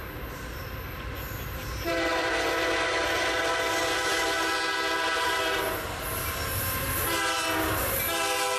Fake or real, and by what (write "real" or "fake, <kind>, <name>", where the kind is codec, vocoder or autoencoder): real